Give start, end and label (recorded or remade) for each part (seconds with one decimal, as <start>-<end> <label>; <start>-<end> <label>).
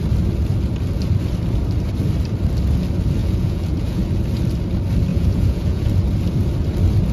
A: 0.0-3.2 recorded; 3.2-4.0 remade; 4.0-5.1 recorded; 5.1-5.9 remade; 5.9-7.1 recorded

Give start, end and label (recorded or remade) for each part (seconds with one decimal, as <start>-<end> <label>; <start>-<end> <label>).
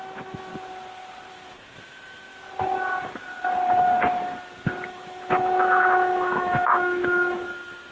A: 0.0-0.5 remade; 0.5-1.3 recorded; 1.3-2.3 remade; 2.3-4.9 recorded; 4.9-7.9 remade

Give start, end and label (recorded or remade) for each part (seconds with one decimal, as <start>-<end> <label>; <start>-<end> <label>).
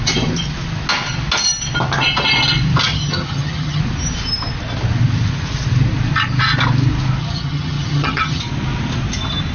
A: 0.0-2.9 recorded; 2.9-3.8 remade; 3.8-7.2 recorded; 7.2-8.4 remade; 8.4-9.5 recorded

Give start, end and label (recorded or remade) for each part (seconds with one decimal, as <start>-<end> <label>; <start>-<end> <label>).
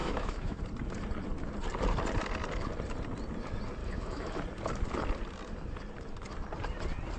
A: 0.0-0.6 remade; 0.6-3.8 recorded; 3.8-4.4 remade; 4.4-7.2 recorded